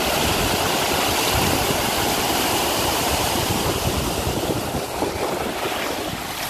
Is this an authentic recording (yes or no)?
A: no